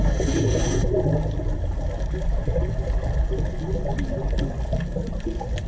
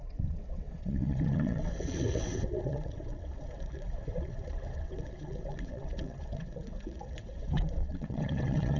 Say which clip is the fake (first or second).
second